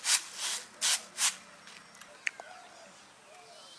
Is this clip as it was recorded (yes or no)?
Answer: yes